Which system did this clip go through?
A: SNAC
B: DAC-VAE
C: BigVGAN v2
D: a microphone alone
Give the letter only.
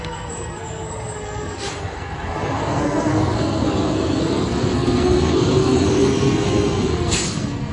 A